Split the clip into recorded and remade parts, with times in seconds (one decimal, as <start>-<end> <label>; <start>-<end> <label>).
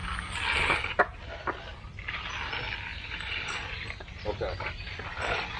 0.0-1.7 recorded; 1.7-2.3 remade; 2.3-2.9 recorded; 2.9-5.0 remade; 5.0-5.6 recorded